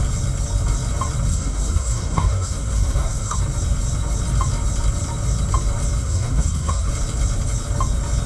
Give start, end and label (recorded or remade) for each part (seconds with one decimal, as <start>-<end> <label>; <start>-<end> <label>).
0.0-1.3 recorded; 1.3-3.4 remade; 3.4-6.0 recorded; 6.0-6.9 remade; 6.9-8.3 recorded